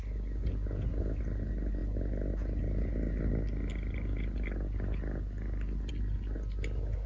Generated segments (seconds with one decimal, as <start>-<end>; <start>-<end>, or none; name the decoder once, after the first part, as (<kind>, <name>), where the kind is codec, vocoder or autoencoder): none